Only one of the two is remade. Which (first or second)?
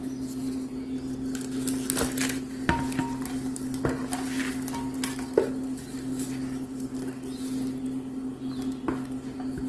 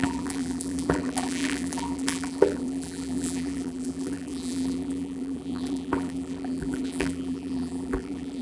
second